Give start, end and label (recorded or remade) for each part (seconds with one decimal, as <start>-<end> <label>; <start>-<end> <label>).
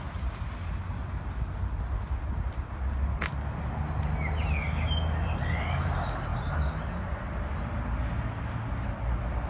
0.0-9.5 recorded